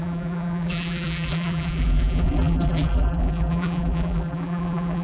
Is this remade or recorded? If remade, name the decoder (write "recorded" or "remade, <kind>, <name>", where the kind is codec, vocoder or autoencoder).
remade, vocoder, BigVGAN v2